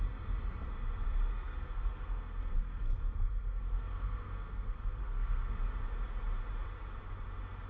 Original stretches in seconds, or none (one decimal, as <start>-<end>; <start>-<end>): 0.0-1.3; 5.6-7.7